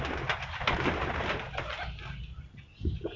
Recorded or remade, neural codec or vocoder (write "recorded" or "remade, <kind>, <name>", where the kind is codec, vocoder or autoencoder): recorded